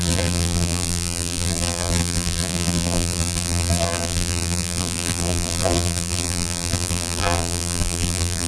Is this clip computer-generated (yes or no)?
yes